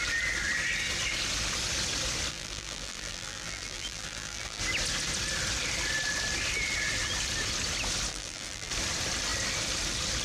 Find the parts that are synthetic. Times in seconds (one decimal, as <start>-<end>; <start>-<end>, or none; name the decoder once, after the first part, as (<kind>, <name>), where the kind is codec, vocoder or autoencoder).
2.3-4.6 (vocoder, BigVGAN v2); 8.1-8.7